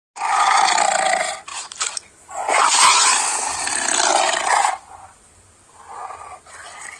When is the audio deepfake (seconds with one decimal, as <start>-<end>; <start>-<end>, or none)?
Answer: none